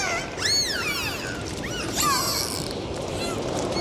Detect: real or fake real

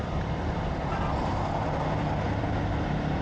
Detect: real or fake fake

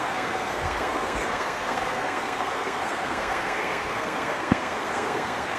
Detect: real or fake fake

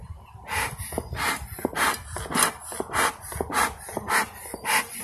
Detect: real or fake real